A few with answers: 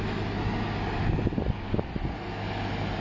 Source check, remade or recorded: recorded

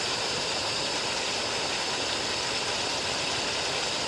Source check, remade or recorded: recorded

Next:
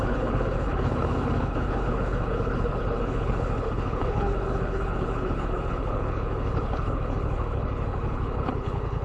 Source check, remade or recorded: remade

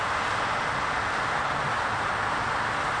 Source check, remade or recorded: recorded